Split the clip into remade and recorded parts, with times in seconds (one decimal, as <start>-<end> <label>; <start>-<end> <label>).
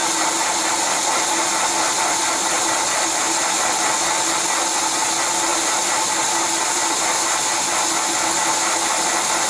0.0-3.6 remade; 3.6-5.5 recorded; 5.5-7.5 remade; 7.5-9.5 recorded